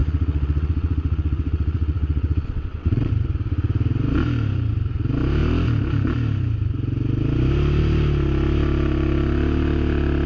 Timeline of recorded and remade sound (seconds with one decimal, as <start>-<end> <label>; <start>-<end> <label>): 0.0-3.1 remade; 3.1-10.3 recorded